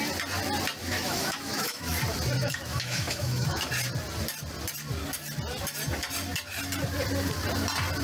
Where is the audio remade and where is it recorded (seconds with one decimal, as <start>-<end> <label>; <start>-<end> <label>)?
0.0-0.8 recorded; 0.8-2.0 remade; 2.0-2.4 recorded; 2.4-3.7 remade; 3.7-8.0 recorded